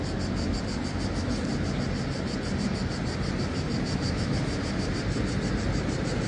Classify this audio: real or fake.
real